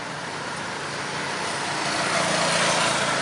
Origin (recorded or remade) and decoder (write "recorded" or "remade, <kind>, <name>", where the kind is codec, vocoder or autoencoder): recorded